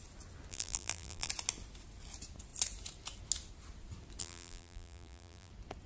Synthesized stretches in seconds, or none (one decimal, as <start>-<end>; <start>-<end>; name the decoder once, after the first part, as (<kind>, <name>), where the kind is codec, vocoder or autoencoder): 0.5-1.3 (vocoder, BigVGAN v2); 4.2-5.5